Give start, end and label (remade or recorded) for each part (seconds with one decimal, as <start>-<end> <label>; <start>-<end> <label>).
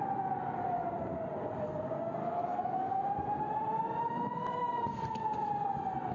0.0-2.2 recorded; 2.2-3.0 remade; 3.0-6.1 recorded